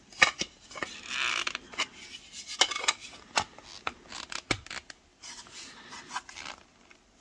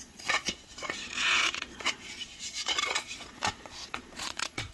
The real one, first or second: first